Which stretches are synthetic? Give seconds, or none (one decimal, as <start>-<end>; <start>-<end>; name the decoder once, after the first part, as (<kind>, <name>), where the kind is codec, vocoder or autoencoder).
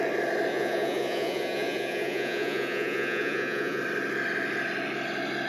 0.5-3.8 (vocoder, Vocos)